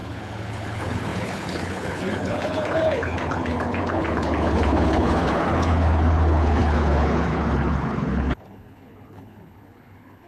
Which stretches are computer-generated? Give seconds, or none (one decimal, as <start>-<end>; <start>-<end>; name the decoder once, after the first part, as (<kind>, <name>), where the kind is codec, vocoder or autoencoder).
0.0-10.3 (codec, HILCodec)

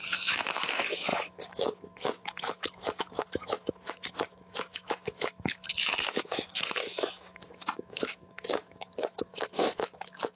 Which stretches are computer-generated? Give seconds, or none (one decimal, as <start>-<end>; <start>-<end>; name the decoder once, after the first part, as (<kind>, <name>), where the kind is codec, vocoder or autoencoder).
0.0-10.3 (autoencoder, DAC-VAE)

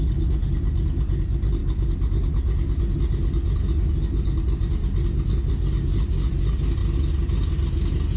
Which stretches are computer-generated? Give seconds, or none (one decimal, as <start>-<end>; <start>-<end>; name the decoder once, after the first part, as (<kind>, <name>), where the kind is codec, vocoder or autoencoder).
none

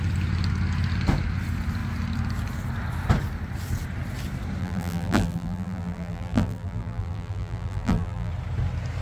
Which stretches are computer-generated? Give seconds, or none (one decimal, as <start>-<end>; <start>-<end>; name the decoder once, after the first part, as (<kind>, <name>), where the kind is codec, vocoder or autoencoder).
4.6-8.3 (vocoder, BigVGAN v2)

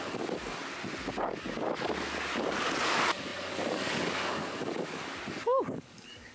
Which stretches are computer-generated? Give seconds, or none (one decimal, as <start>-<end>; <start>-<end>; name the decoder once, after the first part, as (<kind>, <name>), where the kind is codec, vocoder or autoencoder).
0.0-0.6 (codec, DAC); 1.1-6.3

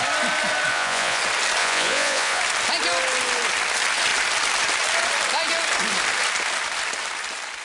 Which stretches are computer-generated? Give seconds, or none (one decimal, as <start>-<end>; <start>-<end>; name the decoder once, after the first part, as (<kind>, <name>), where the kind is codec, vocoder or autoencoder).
0.7-1.2 (vocoder, Vocos); 1.6-2.4

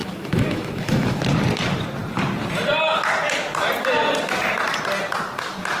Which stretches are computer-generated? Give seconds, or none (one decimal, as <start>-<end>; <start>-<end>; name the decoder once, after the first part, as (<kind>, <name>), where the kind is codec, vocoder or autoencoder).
0.0-1.2 (autoencoder, DAC-VAE)

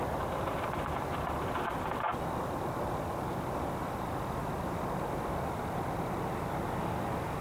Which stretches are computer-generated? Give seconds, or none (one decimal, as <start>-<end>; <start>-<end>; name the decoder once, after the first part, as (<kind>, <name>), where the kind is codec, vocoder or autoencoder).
none